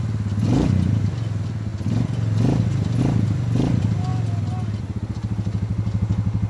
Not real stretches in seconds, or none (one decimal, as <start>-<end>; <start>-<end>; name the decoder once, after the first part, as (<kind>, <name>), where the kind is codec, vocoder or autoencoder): none